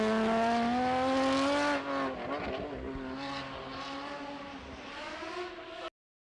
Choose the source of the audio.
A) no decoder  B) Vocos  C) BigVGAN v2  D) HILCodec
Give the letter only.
A